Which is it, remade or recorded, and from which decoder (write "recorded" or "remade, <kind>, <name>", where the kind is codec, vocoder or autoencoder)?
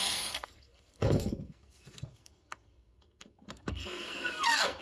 remade, codec, SNAC